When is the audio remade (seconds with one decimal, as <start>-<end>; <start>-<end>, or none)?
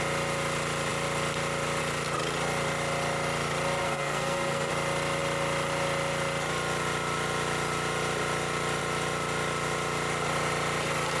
3.8-4.7